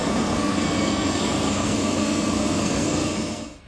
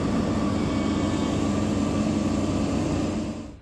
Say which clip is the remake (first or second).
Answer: first